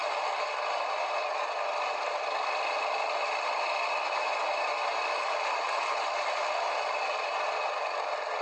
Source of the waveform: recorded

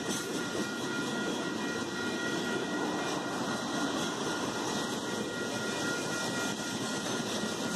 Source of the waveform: remade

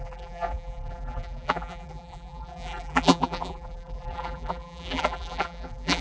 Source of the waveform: remade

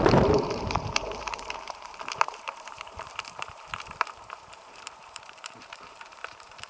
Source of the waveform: remade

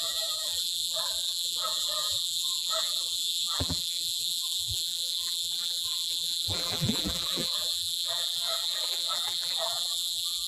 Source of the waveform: remade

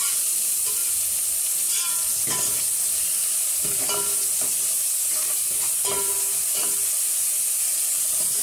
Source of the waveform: recorded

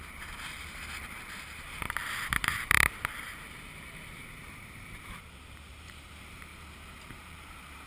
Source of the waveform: remade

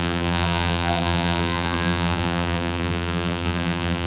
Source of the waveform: remade